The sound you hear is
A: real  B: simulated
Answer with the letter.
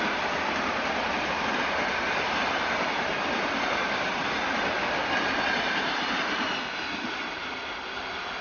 A